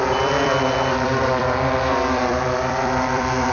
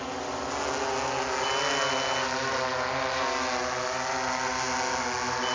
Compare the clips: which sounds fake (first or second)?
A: first